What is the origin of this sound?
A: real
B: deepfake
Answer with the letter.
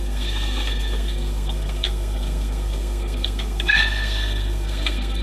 B